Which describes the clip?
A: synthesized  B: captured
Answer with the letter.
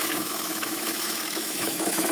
A